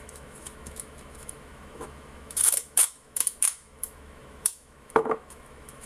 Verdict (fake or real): fake